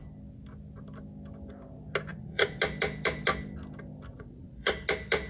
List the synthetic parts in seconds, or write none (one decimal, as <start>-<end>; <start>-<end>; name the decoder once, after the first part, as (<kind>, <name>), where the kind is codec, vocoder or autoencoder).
2.1-2.6 (vocoder, Vocos); 4.1-4.7